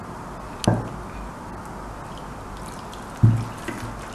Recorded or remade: recorded